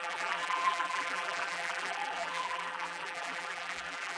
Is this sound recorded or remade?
remade